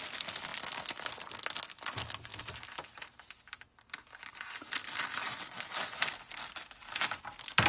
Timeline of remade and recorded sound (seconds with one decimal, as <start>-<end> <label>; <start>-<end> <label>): 0.0-7.7 recorded